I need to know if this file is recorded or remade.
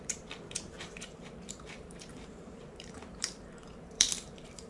remade